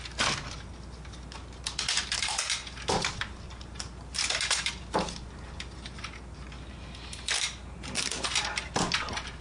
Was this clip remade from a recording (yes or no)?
no